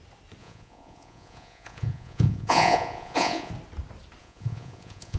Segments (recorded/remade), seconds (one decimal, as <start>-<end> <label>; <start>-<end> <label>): 0.0-0.4 recorded; 0.4-3.5 remade; 3.5-4.2 recorded; 4.2-5.2 remade